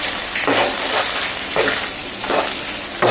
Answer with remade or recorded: recorded